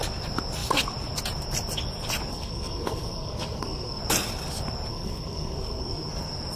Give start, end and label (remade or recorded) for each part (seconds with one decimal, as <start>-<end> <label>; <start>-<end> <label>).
0.0-2.3 recorded; 2.3-4.0 remade; 4.0-4.9 recorded; 4.9-6.1 remade; 6.1-6.6 recorded